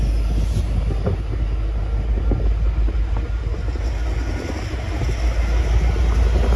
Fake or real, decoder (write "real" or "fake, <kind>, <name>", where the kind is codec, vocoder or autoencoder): real